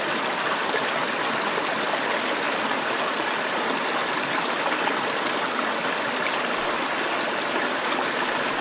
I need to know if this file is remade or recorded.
recorded